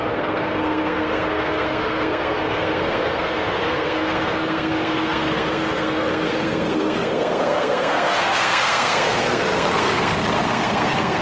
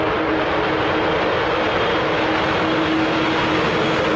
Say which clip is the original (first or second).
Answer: second